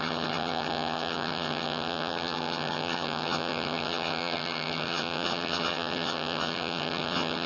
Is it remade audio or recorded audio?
remade